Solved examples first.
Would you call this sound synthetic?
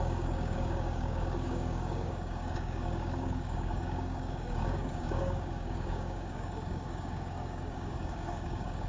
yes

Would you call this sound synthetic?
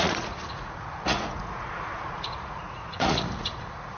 yes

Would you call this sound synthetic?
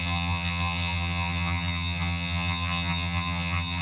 yes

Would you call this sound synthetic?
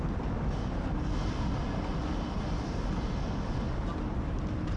no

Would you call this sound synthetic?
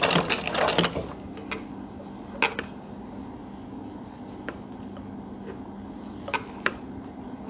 no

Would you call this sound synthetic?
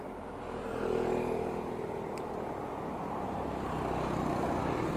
no